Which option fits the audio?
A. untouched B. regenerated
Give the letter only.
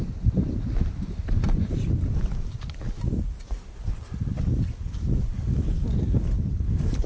A